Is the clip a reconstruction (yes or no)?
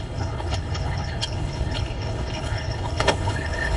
yes